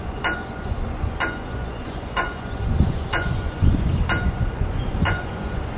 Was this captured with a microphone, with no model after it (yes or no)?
no